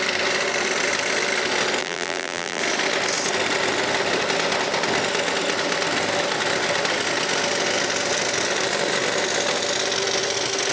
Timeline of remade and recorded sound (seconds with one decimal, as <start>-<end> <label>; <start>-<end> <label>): 0.0-1.8 recorded; 1.8-2.6 remade; 2.6-10.7 recorded